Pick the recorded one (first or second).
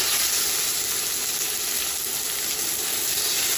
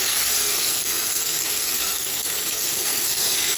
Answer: first